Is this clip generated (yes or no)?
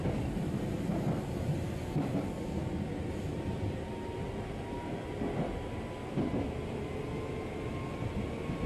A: no